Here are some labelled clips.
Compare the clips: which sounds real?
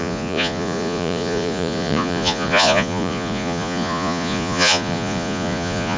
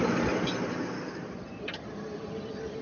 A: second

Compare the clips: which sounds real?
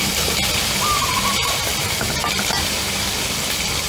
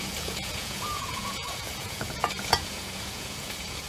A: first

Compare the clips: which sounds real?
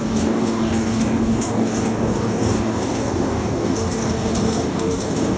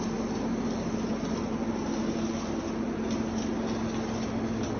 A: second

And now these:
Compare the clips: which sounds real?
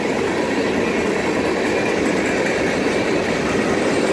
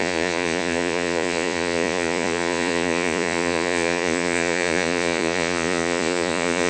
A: first